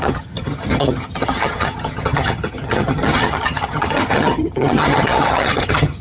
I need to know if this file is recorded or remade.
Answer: remade